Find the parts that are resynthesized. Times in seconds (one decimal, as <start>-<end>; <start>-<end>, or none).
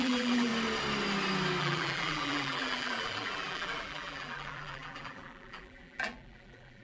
0.0-0.5; 1.6-6.8